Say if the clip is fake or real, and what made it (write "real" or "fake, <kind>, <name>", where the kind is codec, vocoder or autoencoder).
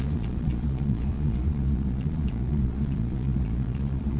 fake, vocoder, Vocos